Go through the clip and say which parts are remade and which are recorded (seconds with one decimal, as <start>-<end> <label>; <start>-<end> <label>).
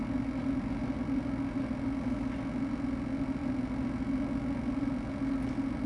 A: 0.0-5.9 recorded